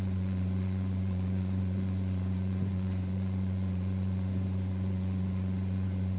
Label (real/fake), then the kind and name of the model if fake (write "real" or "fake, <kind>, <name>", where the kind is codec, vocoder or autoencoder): fake, vocoder, Vocos